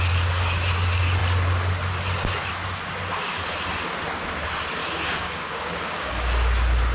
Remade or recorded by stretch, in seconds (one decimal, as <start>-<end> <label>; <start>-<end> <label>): 0.0-4.8 recorded; 4.8-6.1 remade; 6.1-6.9 recorded